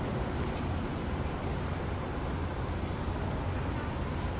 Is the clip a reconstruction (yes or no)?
no